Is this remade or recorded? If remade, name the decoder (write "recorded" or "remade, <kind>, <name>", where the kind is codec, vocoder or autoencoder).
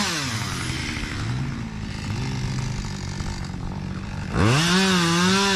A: recorded